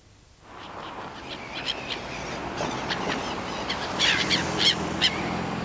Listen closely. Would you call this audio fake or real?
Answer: real